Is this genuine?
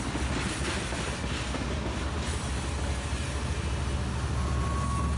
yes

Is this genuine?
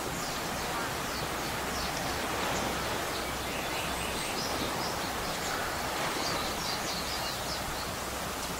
yes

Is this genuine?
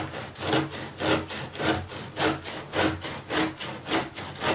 yes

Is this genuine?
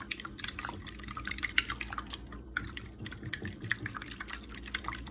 no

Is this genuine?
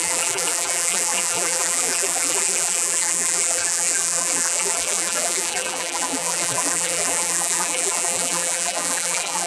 no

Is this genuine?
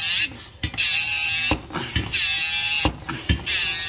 yes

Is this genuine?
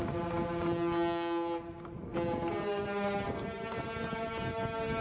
yes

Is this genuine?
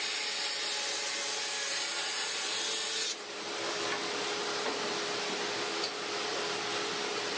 yes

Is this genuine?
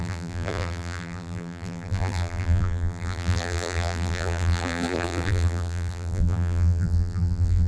no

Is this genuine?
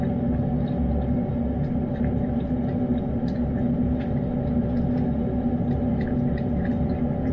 yes